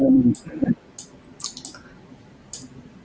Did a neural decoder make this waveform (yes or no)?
no